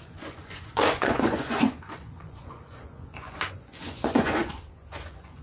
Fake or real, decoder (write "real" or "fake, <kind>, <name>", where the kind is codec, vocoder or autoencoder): fake, vocoder, Vocos